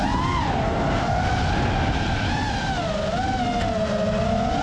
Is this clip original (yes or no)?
yes